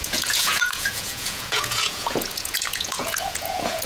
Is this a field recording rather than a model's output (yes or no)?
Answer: no